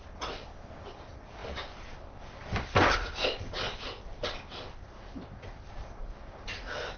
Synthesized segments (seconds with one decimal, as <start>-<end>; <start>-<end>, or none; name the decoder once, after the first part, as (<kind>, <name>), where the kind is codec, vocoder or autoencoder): 0.0-7.0 (vocoder, BigVGAN v2)